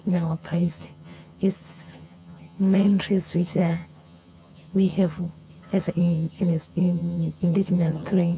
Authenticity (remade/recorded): remade